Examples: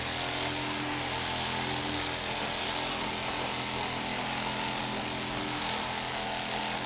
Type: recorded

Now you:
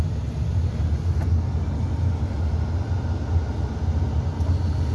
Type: recorded